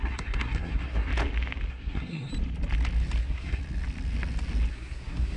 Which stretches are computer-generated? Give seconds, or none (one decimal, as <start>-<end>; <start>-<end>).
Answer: 0.0-1.1; 1.7-2.3; 3.2-3.6; 4.7-5.4